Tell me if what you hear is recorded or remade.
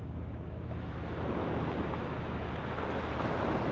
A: remade